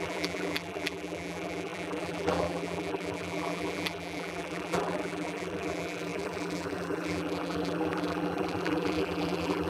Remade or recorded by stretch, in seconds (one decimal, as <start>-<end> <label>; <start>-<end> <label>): 0.0-9.7 remade